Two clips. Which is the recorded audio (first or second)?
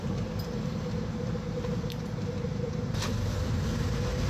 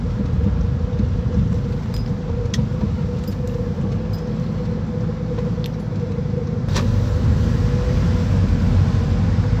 second